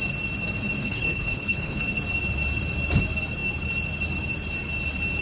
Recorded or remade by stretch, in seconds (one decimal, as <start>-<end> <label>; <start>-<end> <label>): 0.0-0.8 recorded; 0.8-1.8 remade; 1.8-5.2 recorded